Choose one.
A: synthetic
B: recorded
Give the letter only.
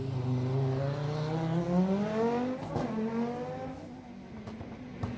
B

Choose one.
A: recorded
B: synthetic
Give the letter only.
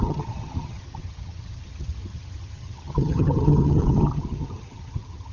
B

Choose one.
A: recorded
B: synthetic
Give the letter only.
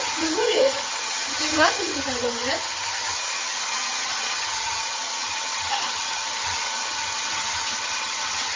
B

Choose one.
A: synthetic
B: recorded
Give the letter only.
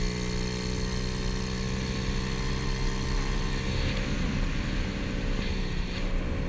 B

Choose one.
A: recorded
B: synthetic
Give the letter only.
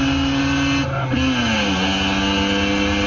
A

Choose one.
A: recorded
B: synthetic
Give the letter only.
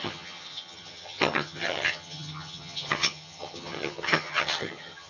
B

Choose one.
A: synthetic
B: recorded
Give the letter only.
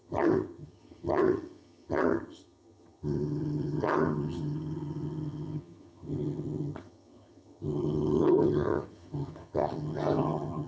A